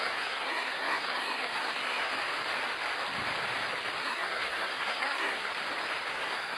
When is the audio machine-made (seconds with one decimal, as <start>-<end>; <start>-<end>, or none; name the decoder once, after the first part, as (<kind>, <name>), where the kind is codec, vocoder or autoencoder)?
0.0-2.1 (codec, SNAC); 4.0-5.5; 6.1-6.6